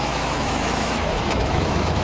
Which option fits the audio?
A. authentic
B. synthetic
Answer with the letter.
B